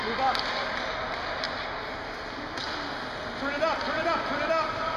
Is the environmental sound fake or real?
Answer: real